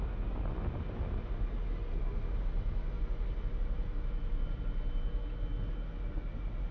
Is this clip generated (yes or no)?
no